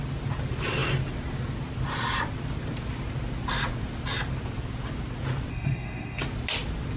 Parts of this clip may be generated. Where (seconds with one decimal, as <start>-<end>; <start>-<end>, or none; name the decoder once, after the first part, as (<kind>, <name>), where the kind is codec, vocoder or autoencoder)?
5.5-6.2 (codec, SNAC)